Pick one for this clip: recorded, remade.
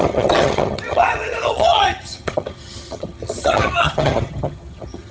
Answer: remade